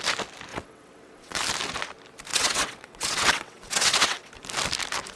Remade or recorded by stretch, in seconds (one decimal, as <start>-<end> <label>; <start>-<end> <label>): 0.0-0.5 recorded; 0.5-1.4 remade; 1.4-2.3 recorded; 2.3-4.3 remade; 4.3-5.2 recorded